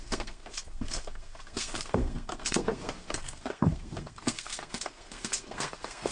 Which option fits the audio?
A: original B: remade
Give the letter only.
B